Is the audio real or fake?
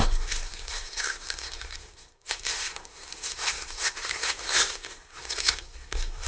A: fake